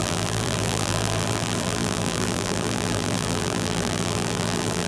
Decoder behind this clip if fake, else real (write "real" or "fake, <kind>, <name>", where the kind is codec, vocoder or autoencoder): fake, vocoder, BigVGAN v2